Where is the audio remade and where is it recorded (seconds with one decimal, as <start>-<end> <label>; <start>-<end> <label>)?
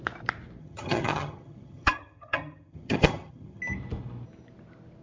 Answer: 0.0-0.6 recorded; 0.6-3.6 remade; 3.6-5.0 recorded